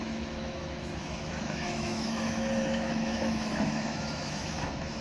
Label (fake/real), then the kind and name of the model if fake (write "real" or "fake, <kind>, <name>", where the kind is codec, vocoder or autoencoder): fake, autoencoder, DAC-VAE